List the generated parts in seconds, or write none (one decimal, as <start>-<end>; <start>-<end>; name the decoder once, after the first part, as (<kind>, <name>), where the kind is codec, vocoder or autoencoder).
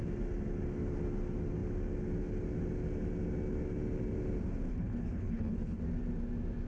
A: 4.7-5.8 (codec, HILCodec)